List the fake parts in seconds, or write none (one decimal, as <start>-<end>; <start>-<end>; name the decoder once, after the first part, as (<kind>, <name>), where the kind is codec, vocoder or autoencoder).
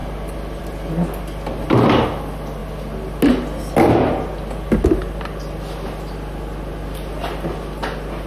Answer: none